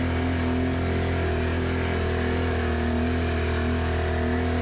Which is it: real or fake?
real